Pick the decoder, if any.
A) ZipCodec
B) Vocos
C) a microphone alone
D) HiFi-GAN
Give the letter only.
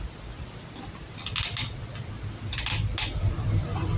C